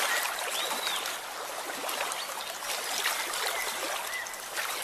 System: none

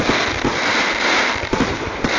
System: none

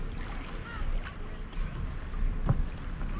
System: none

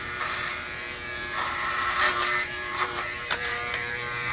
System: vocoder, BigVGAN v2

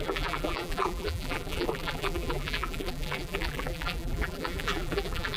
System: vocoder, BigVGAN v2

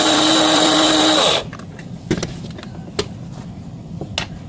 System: none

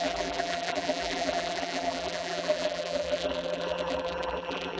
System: vocoder, BigVGAN v2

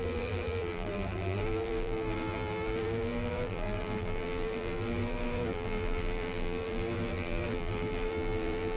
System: vocoder, BigVGAN v2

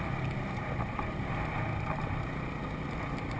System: none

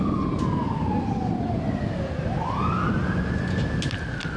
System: none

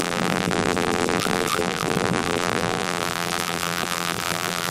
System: vocoder, BigVGAN v2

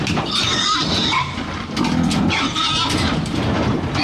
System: vocoder, BigVGAN v2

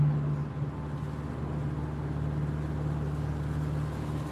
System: none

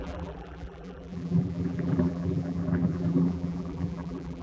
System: vocoder, BigVGAN v2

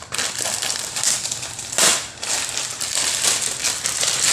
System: vocoder, BigVGAN v2